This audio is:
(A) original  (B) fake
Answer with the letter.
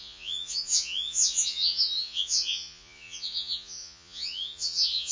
B